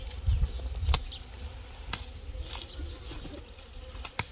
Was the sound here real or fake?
real